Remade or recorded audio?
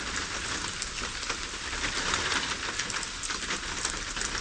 recorded